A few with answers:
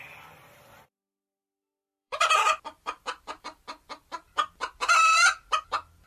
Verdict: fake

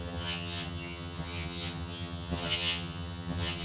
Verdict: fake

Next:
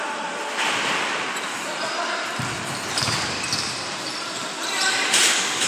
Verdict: fake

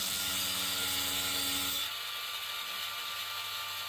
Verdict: real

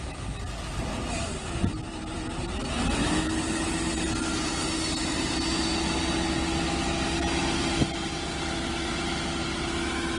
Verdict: real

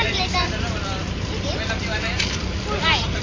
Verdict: real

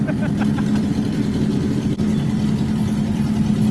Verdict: real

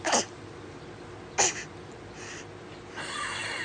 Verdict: real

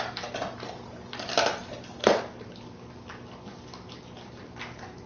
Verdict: real